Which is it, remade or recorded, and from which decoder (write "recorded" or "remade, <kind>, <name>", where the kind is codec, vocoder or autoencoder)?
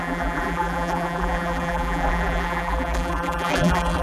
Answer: remade, vocoder, BigVGAN v2